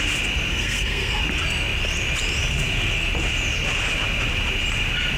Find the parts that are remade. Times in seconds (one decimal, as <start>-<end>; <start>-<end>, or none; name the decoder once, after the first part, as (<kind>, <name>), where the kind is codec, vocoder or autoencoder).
0.5-1.2 (codec, SNAC)